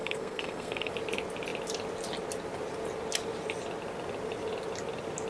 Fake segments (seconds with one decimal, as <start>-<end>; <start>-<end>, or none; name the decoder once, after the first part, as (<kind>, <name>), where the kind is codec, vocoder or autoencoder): 0.0-0.9 (codec, SNAC)